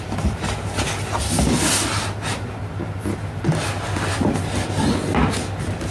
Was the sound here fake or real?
real